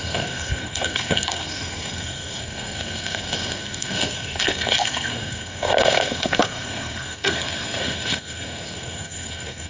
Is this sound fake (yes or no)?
yes